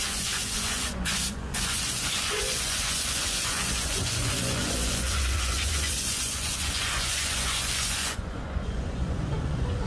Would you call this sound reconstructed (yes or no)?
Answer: yes